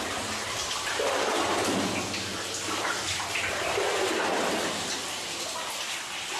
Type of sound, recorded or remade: recorded